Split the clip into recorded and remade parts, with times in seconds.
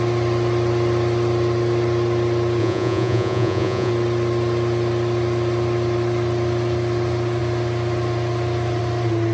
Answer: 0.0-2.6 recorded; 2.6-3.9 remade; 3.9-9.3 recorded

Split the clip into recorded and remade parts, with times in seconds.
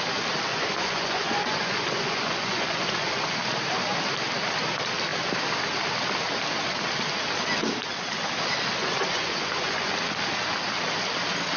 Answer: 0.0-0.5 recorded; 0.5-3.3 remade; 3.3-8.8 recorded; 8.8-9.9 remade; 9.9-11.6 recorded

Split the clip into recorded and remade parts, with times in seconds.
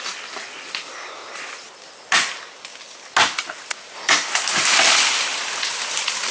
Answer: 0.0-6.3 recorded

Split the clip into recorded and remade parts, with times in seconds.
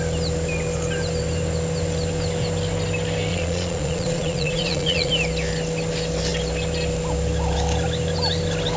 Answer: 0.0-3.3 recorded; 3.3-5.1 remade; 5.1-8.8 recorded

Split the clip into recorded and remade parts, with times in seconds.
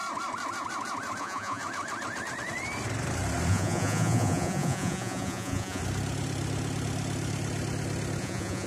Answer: 0.0-1.2 recorded; 1.2-1.6 remade; 1.6-3.5 recorded; 3.5-5.8 remade; 5.8-8.2 recorded; 8.2-8.7 remade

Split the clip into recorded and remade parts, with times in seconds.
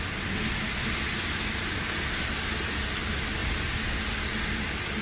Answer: 0.0-5.0 recorded